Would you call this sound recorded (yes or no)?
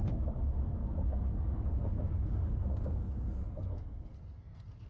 no